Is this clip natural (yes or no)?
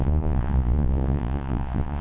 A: no